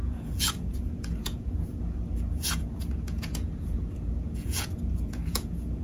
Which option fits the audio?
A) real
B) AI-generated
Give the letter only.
B